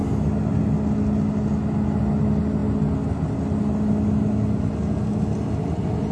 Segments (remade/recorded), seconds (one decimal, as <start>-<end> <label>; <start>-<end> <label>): 0.0-6.1 recorded